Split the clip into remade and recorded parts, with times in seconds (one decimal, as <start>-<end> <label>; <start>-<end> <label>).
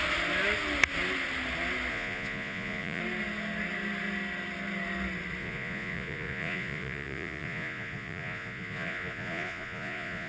0.0-1.9 recorded; 1.9-3.0 remade; 3.0-5.4 recorded; 5.4-10.3 remade